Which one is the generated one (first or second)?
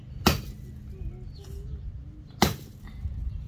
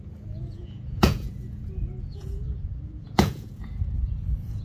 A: second